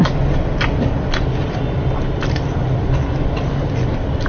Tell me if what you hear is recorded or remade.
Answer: recorded